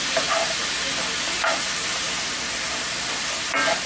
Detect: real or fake real